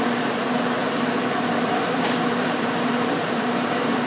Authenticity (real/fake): fake